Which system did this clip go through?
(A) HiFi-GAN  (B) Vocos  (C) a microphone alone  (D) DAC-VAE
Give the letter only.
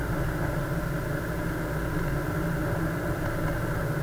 C